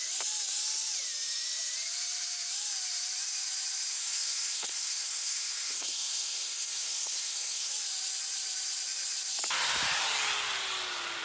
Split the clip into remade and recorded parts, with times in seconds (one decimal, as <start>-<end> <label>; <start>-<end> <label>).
0.0-3.9 recorded; 3.9-7.7 remade; 7.7-11.2 recorded